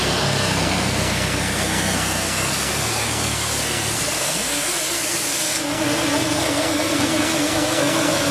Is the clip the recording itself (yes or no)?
no